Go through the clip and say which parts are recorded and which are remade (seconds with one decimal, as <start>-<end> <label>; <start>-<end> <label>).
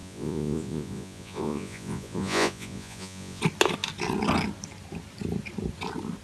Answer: 0.0-3.4 remade; 3.4-6.2 recorded